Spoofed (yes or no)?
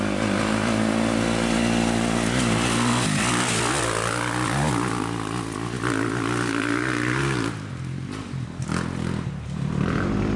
no